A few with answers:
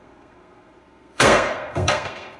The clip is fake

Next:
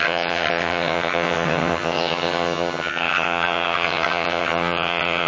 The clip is fake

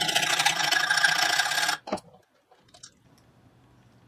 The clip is real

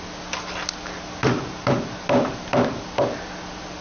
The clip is real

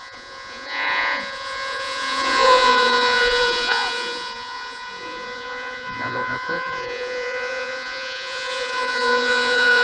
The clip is fake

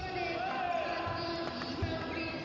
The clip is real